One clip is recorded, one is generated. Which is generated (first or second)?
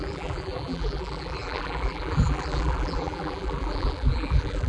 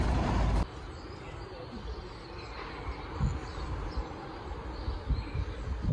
first